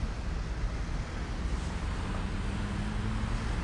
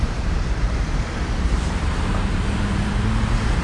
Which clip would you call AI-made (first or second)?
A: second